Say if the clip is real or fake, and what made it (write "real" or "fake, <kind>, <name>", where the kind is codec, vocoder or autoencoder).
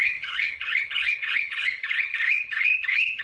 fake, codec, HILCodec